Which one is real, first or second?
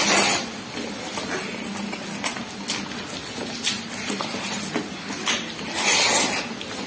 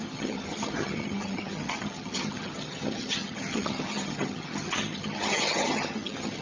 first